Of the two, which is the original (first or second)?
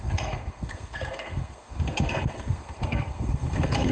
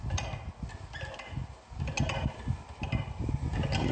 second